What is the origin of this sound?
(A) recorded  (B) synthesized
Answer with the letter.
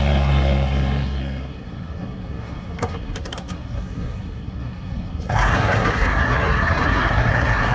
B